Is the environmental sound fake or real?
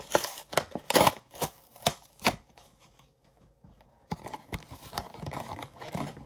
fake